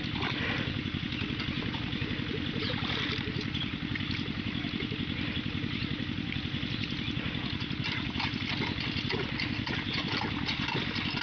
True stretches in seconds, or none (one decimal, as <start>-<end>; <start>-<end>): 0.0-11.2